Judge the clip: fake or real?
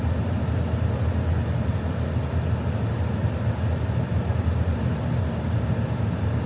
real